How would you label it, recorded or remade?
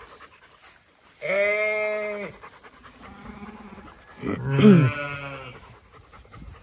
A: recorded